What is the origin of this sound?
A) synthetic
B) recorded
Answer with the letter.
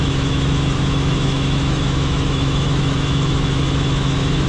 A